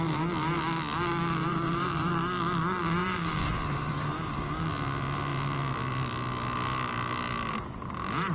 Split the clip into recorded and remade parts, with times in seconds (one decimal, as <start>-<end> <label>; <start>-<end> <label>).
0.0-1.4 recorded; 1.4-2.1 remade; 2.1-3.0 recorded; 3.0-4.5 remade; 4.5-8.3 recorded